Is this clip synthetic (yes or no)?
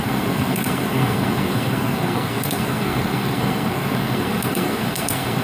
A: yes